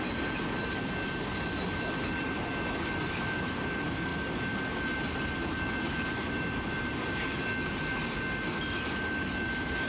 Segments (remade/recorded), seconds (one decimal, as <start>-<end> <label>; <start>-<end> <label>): 0.0-9.9 recorded